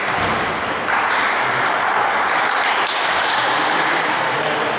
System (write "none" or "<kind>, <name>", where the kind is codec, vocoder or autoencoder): none